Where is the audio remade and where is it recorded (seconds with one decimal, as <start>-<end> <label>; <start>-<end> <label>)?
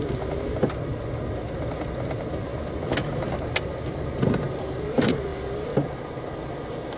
0.0-7.0 recorded